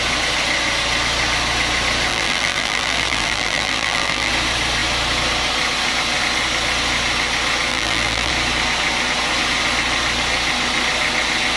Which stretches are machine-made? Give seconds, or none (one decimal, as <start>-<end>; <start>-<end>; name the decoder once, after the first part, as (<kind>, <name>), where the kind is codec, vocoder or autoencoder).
2.1-4.3 (vocoder, BigVGAN v2); 7.7-8.3